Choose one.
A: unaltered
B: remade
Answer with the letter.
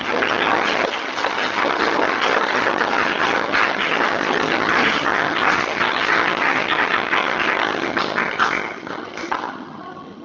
B